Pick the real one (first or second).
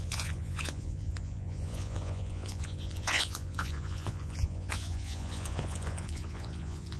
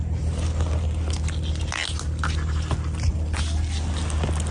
second